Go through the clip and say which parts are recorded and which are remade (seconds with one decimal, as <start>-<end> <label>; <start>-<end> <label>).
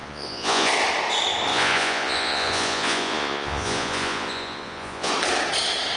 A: 0.0-0.7 remade; 0.7-1.5 recorded; 1.5-5.1 remade; 5.1-6.0 recorded